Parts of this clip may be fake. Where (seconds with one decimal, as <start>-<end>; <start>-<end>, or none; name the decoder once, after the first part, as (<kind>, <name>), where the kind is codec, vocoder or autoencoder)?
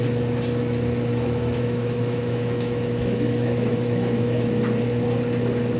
1.1-4.4 (autoencoder, DAC-VAE)